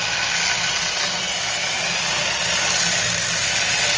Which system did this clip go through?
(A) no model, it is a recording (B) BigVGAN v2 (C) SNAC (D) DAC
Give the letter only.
A